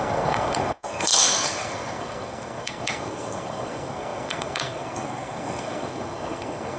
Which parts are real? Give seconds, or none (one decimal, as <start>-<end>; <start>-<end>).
none